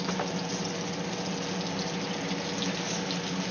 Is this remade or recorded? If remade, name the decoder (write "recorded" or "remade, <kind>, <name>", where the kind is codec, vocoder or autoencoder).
recorded